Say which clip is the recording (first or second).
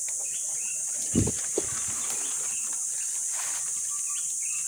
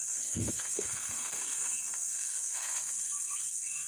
first